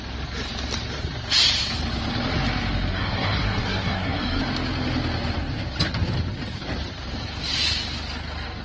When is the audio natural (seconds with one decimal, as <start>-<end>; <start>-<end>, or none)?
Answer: 0.0-2.9; 4.4-8.6